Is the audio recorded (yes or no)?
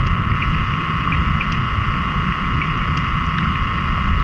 yes